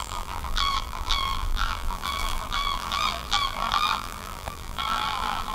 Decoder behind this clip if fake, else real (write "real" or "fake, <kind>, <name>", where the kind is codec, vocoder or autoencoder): fake, vocoder, BigVGAN v2